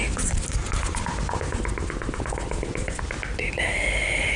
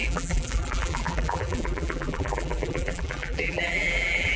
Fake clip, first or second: second